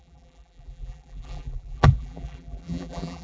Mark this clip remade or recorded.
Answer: remade